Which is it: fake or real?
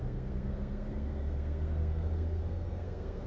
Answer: fake